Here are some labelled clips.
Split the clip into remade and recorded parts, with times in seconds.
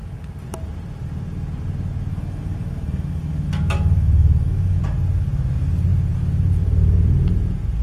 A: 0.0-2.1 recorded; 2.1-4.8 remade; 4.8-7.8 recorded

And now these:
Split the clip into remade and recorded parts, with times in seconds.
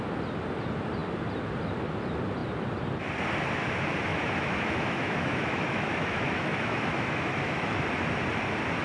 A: 0.0-4.1 recorded; 4.1-7.8 remade; 7.8-8.8 recorded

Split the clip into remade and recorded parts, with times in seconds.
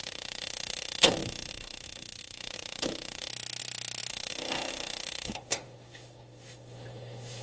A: 0.0-3.3 remade; 3.3-4.1 recorded; 4.1-7.4 remade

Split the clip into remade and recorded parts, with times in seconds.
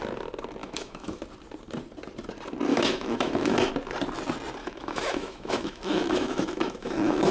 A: 0.0-0.6 recorded; 0.6-1.2 remade; 1.2-2.7 recorded; 2.7-3.7 remade; 3.7-4.6 recorded; 4.6-7.3 remade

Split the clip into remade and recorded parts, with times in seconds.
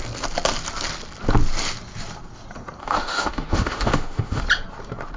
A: 0.0-2.8 recorded; 2.8-4.4 remade; 4.4-5.2 recorded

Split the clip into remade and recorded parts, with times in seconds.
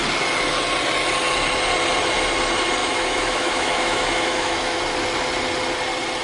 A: 0.0-2.8 recorded; 2.8-4.8 remade; 4.8-6.2 recorded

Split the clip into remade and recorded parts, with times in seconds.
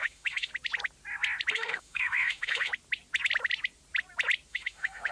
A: 0.0-0.5 remade; 0.5-1.5 recorded; 1.5-2.7 remade; 2.7-4.5 recorded; 4.5-5.1 remade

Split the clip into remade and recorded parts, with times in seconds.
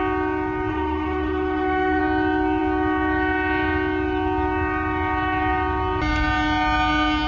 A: 0.0-0.7 recorded; 0.7-2.0 remade; 2.0-7.3 recorded